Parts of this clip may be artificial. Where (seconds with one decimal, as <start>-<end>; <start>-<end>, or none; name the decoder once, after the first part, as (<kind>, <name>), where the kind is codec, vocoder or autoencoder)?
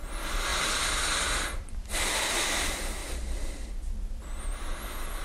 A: 3.0-3.7 (vocoder, BigVGAN v2)